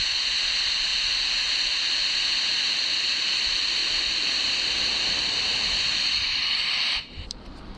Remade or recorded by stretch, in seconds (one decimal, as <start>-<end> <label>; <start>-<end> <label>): 0.0-0.9 remade; 0.9-3.4 recorded; 3.4-7.8 remade